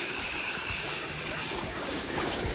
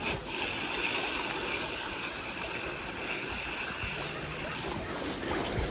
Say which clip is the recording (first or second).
second